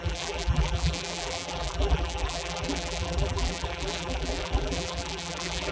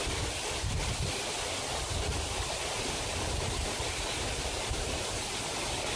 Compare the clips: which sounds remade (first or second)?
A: first